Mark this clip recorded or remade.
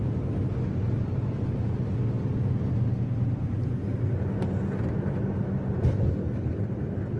recorded